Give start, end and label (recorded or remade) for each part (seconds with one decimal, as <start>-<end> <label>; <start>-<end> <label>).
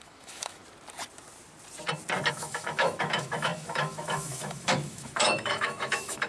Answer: 0.0-0.6 remade; 0.6-2.3 recorded; 2.3-6.3 remade